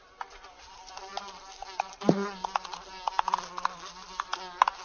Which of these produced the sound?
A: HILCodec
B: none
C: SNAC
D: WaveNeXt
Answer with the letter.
B